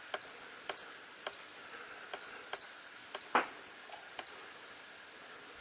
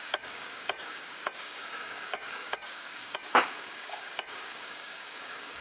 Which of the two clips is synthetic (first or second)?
second